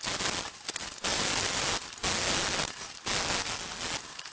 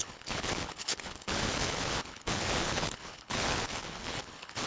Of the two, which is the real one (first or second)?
first